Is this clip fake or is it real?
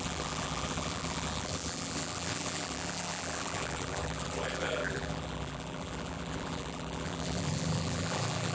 fake